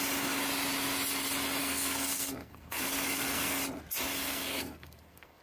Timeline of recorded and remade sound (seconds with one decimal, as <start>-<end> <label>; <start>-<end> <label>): 0.0-1.6 recorded; 1.6-3.6 remade; 3.6-4.2 recorded; 4.2-5.4 remade